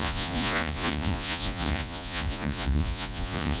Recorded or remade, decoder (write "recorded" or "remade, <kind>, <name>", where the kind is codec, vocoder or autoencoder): remade, vocoder, Vocos